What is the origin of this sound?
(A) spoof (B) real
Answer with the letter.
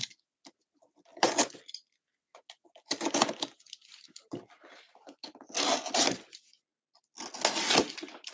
B